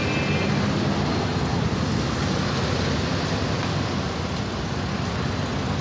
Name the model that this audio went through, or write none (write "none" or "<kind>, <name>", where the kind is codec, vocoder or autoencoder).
none